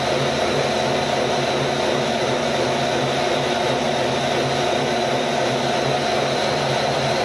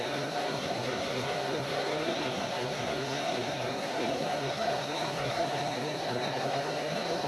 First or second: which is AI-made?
second